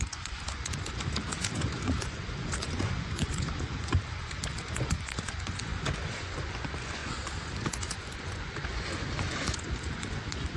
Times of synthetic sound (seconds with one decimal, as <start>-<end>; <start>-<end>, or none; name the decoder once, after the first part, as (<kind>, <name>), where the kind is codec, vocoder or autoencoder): 0.0-10.6 (vocoder, Vocos)